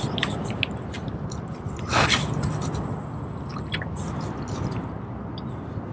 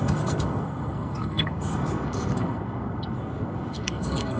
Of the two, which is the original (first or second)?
first